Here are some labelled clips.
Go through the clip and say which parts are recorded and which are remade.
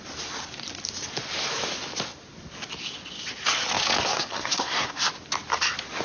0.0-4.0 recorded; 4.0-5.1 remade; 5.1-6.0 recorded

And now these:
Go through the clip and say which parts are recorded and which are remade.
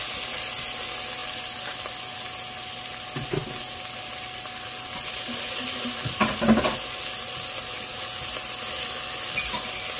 0.0-10.0 recorded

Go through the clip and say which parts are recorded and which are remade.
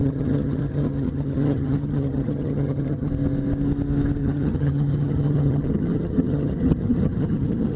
0.0-3.1 remade; 3.1-4.2 recorded; 4.2-7.8 remade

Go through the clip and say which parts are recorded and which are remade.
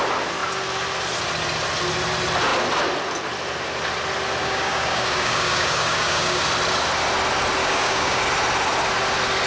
0.0-4.4 recorded; 4.4-6.4 remade; 6.4-7.6 recorded; 7.6-8.2 remade; 8.2-9.5 recorded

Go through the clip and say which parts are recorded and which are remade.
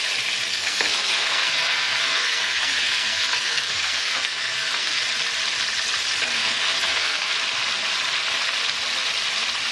0.0-0.5 recorded; 0.5-5.0 remade; 5.0-6.4 recorded; 6.4-7.3 remade; 7.3-9.7 recorded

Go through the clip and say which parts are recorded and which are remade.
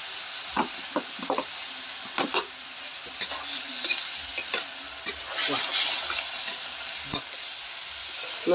0.0-8.5 recorded